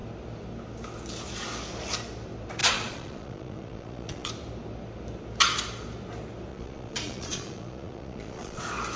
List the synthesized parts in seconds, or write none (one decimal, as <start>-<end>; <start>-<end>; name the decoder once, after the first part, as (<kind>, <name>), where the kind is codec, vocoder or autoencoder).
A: 2.6-4.3 (vocoder, Vocos); 6.5-8.6